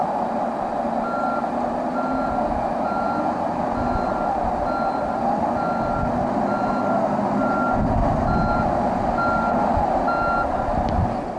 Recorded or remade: recorded